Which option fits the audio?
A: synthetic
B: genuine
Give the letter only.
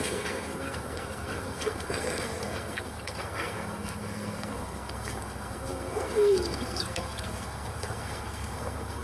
A